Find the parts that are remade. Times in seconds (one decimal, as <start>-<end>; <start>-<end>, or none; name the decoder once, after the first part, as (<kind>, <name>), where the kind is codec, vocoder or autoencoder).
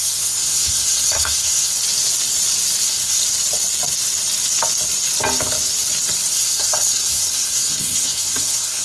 0.0-1.7 (codec, SNAC); 2.8-3.2; 6.3-8.8